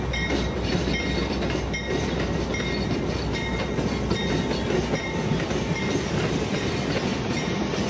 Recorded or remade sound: recorded